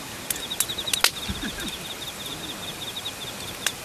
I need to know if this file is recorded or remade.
recorded